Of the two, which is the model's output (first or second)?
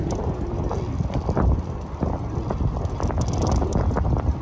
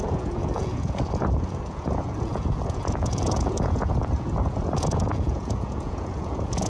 second